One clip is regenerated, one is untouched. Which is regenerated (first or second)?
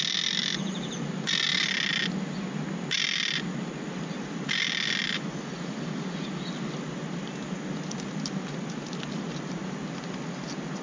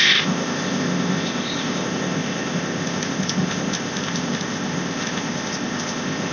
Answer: second